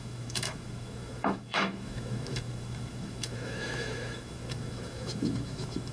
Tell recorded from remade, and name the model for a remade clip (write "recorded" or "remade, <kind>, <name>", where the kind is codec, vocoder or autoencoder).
remade, autoencoder, DAC-VAE